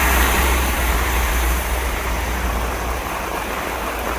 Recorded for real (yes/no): no